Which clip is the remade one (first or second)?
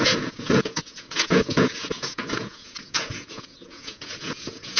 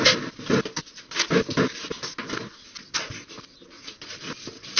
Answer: first